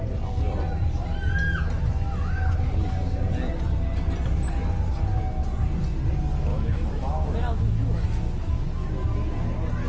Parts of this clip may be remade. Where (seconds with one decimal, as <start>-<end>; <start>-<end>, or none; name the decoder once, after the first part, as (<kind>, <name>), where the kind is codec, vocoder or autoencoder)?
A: 6.5-8.6 (autoencoder, DAC-VAE)